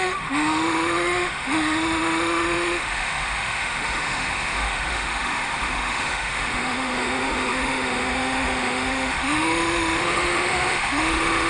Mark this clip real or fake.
fake